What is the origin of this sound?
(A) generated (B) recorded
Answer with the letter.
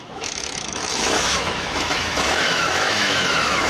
A